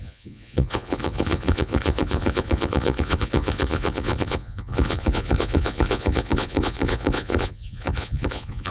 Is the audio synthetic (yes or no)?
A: yes